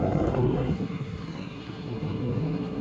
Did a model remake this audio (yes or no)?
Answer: yes